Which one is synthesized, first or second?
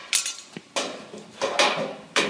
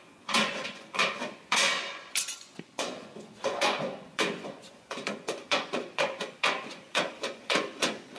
second